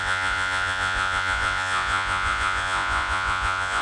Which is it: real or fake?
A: fake